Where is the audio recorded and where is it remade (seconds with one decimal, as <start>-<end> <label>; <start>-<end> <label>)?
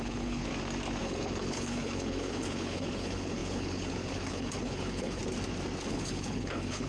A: 0.0-0.5 remade; 0.5-1.0 recorded; 1.0-5.2 remade; 5.2-5.9 recorded; 5.9-6.9 remade